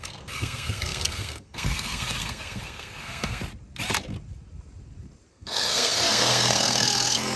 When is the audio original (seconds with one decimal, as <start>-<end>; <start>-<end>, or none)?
3.4-5.3